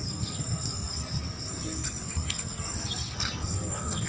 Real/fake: fake